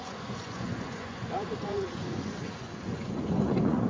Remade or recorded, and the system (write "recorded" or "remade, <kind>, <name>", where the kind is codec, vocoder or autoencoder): remade, vocoder, Vocos